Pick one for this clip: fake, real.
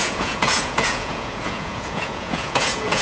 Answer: fake